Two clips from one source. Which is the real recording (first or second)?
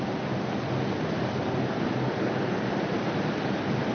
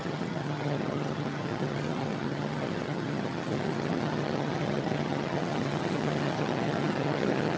first